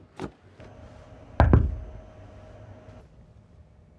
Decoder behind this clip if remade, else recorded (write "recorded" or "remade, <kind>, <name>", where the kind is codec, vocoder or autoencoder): recorded